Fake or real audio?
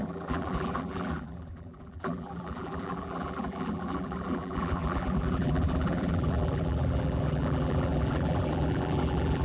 fake